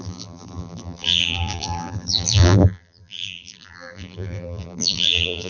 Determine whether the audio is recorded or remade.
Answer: remade